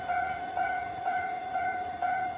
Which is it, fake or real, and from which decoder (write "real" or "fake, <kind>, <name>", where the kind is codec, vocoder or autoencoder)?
fake, vocoder, Vocos